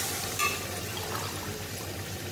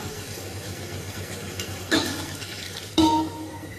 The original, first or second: first